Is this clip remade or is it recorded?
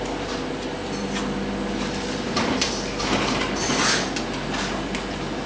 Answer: recorded